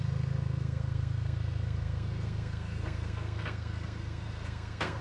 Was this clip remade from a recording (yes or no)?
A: yes